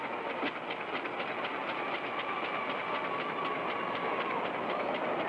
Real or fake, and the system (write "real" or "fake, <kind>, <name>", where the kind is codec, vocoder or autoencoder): real